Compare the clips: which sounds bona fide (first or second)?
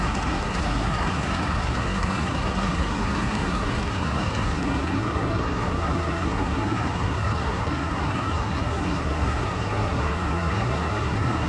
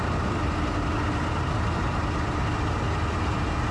second